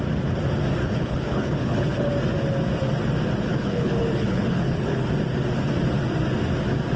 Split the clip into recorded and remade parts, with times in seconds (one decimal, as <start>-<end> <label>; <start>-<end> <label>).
0.0-0.8 recorded; 0.8-2.1 remade; 2.1-3.5 recorded; 3.5-5.1 remade; 5.1-7.0 recorded